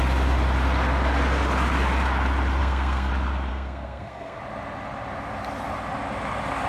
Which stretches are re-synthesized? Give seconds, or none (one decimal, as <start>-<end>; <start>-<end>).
2.6-3.1; 3.5-4.4